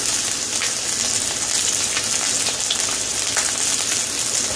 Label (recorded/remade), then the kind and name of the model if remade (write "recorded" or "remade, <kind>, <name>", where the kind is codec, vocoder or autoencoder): recorded